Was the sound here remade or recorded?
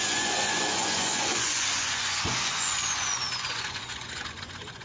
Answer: remade